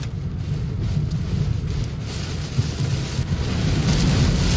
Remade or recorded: recorded